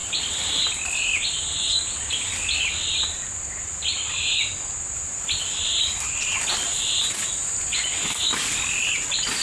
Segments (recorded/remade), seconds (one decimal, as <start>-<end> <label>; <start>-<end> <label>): 0.0-9.4 recorded